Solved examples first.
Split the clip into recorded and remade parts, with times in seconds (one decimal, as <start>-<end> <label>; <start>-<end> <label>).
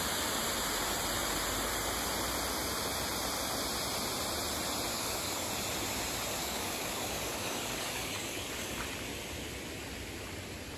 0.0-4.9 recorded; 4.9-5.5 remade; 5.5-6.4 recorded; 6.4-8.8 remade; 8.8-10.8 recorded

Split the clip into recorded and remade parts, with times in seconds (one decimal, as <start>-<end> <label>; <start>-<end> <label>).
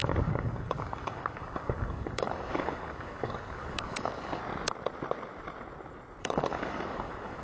0.0-4.4 remade; 4.4-6.2 recorded; 6.2-7.4 remade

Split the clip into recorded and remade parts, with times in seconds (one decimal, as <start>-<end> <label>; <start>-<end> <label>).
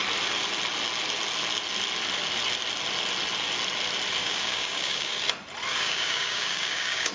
0.0-4.2 recorded; 4.2-5.2 remade; 5.2-5.7 recorded; 5.7-7.1 remade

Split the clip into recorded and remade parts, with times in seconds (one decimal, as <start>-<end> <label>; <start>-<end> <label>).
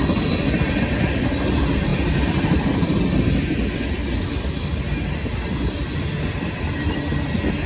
0.0-7.7 recorded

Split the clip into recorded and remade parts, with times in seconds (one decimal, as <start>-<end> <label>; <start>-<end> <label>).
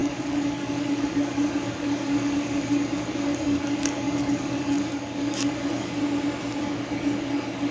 0.0-6.0 remade; 6.0-6.6 recorded; 6.6-7.7 remade